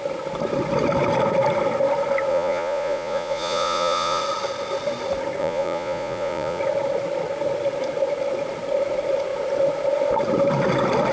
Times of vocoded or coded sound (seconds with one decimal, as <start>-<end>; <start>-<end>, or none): 2.3-4.2; 5.4-6.6